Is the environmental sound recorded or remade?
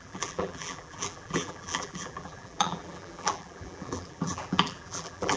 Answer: remade